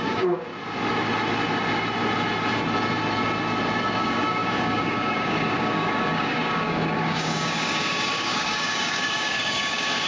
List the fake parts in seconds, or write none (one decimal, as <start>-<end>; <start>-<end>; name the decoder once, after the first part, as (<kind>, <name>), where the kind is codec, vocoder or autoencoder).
0.0-0.5 (codec, DAC); 4.0-10.1

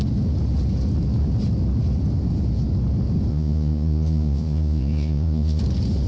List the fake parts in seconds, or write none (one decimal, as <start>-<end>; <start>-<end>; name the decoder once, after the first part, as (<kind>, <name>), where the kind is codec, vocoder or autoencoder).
3.3-5.6 (vocoder, Vocos)

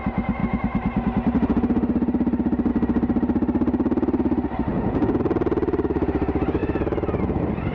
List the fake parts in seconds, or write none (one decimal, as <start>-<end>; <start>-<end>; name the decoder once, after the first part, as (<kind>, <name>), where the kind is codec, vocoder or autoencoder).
4.7-5.2 (vocoder, Vocos)

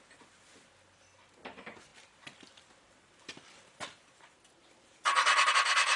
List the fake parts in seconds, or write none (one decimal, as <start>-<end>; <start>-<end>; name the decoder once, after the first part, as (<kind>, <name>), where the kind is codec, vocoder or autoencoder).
none

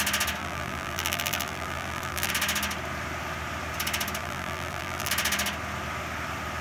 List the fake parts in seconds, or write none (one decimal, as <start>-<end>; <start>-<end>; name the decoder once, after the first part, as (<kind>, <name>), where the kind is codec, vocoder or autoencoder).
0.4-2.3 (vocoder, BigVGAN v2); 4.2-5.1

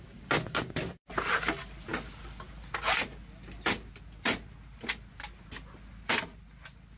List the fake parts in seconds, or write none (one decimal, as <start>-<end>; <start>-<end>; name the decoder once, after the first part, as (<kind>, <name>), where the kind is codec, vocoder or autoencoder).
none

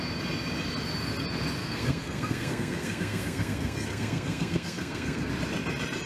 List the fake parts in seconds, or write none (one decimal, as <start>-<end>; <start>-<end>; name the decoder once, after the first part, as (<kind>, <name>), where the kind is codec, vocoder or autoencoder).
1.6-5.3 (codec, SNAC)

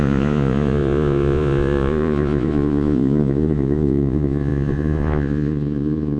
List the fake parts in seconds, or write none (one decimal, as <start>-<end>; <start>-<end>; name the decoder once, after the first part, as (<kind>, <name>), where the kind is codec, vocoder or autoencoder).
0.0-6.2 (vocoder, Vocos)